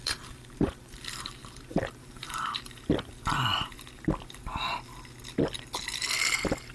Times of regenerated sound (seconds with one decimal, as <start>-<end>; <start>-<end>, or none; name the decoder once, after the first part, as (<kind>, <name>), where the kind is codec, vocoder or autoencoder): 0.0-3.1 (vocoder, BigVGAN v2)